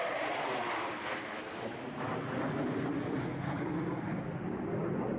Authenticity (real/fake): real